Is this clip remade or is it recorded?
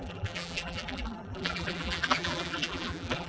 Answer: remade